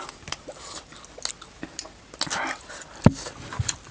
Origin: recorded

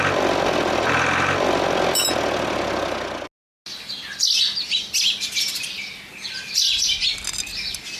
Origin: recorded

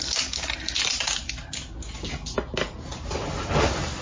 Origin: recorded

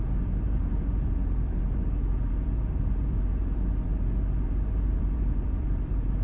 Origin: remade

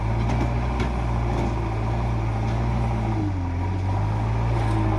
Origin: recorded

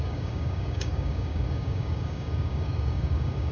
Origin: remade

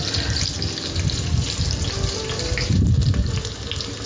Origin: recorded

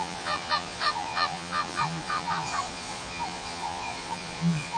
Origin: remade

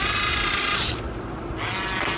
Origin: recorded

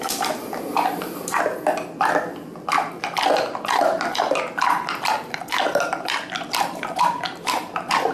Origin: remade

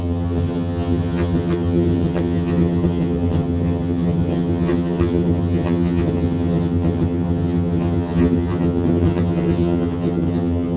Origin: remade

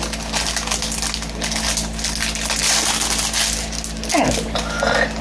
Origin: recorded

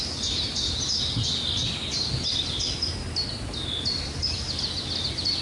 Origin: recorded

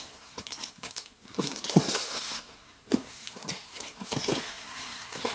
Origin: remade